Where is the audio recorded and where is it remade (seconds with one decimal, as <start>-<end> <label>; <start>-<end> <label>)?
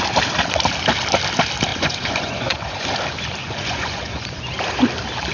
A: 0.0-1.7 recorded; 1.7-2.9 remade; 2.9-3.4 recorded; 3.4-4.4 remade; 4.4-5.3 recorded